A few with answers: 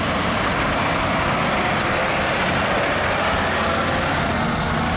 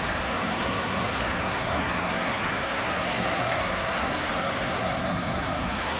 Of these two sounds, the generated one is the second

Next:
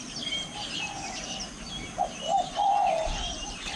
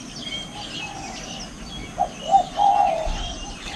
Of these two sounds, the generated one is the first